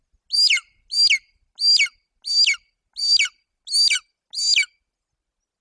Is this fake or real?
real